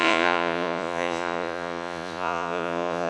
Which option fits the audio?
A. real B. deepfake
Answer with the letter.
B